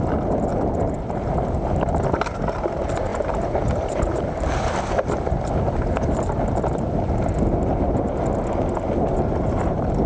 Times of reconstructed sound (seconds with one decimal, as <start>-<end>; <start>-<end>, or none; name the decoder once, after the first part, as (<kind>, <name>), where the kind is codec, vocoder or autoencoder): none